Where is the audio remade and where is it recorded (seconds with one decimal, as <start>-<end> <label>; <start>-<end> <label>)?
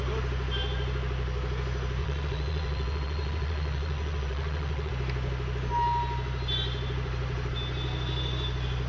0.0-2.0 recorded; 2.0-4.9 remade; 4.9-8.9 recorded